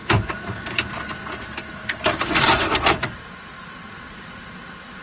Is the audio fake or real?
fake